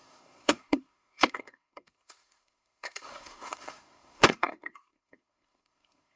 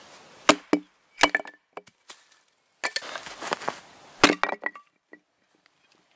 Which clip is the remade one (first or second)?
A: first